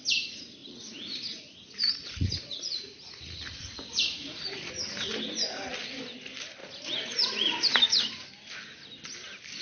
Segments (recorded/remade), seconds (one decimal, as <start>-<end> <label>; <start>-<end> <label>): 0.0-0.6 recorded; 0.6-4.7 remade; 4.7-6.6 recorded; 6.6-8.3 remade; 8.3-9.6 recorded